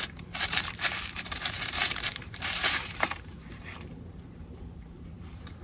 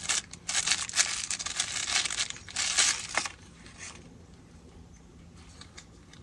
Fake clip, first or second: first